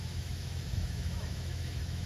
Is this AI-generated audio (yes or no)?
yes